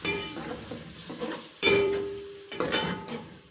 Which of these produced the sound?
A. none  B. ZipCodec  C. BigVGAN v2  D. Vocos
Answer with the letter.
C